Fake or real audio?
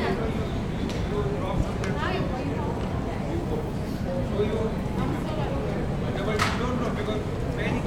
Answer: real